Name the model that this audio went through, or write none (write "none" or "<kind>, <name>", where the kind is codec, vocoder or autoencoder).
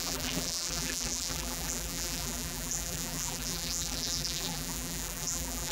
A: vocoder, BigVGAN v2